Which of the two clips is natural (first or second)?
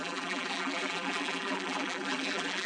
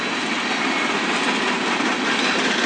second